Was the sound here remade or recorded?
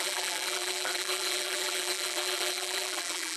remade